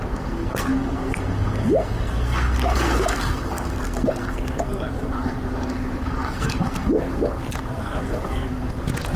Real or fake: fake